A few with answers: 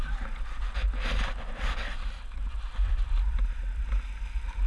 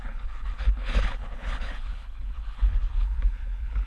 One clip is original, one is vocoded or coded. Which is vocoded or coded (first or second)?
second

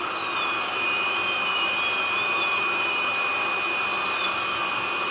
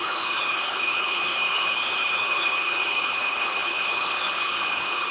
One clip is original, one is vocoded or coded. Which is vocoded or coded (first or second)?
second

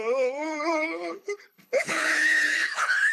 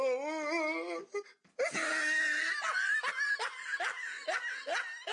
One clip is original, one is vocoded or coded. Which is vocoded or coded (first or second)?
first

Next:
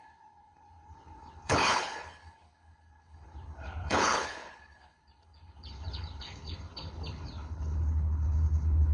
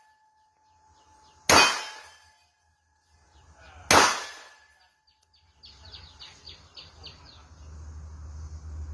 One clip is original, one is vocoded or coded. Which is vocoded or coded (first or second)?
first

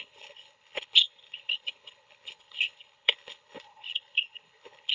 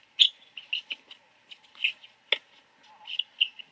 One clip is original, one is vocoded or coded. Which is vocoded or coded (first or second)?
first